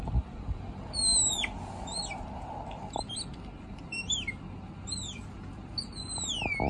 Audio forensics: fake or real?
real